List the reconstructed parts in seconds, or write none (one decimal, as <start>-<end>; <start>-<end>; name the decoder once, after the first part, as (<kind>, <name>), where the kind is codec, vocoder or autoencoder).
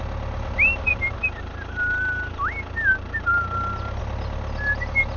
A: none